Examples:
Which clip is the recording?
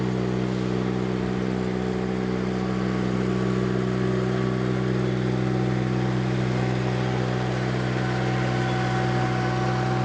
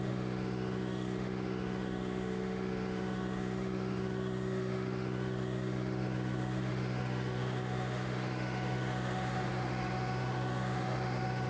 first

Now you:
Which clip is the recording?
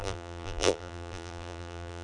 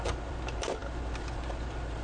second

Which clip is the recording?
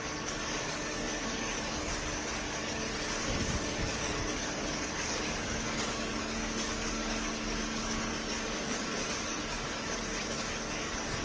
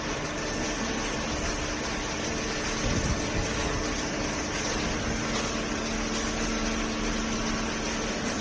second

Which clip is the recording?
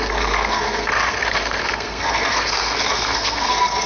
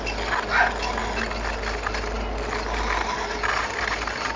second